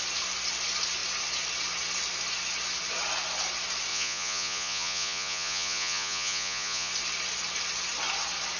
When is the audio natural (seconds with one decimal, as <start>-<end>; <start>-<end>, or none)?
0.0-3.9; 6.9-8.6